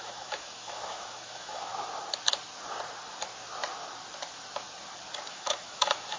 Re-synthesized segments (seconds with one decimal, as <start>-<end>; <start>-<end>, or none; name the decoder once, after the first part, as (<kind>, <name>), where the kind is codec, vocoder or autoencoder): 0.0-1.7 (autoencoder, DAC-VAE); 5.3-6.2